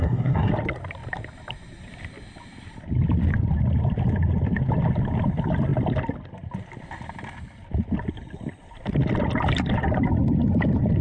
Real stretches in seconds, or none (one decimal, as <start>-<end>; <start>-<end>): 0.5-11.0